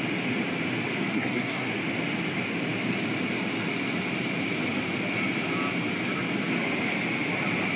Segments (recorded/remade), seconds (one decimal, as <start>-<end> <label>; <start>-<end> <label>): 0.0-1.1 recorded; 1.1-1.7 remade; 1.7-7.8 recorded